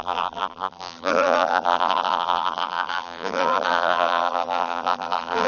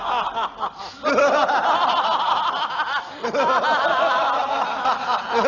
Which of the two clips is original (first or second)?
second